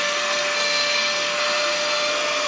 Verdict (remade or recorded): remade